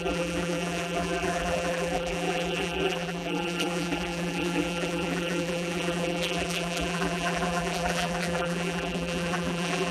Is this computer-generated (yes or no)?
yes